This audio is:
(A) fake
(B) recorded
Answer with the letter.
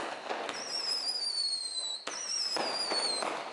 B